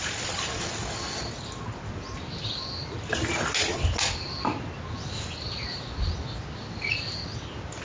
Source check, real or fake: real